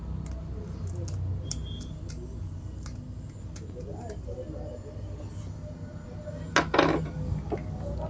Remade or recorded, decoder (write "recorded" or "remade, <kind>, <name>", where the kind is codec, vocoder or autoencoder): recorded